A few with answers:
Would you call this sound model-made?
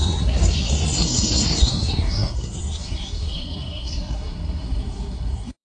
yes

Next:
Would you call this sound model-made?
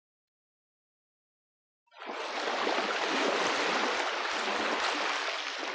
no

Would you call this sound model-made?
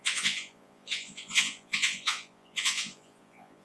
yes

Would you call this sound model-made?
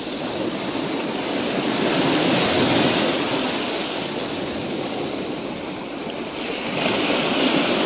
no